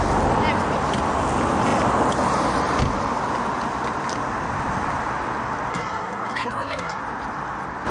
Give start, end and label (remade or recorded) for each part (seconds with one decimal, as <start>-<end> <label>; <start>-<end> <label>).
0.0-5.7 recorded; 5.7-7.0 remade; 7.0-7.9 recorded